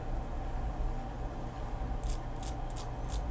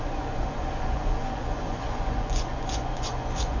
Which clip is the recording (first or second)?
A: first